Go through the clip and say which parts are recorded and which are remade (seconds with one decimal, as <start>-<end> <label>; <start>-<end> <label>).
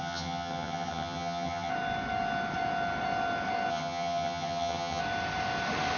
0.0-1.7 remade; 1.7-3.7 recorded; 3.7-5.0 remade; 5.0-6.0 recorded